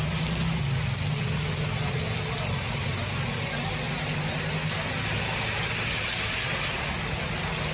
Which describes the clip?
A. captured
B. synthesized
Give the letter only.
A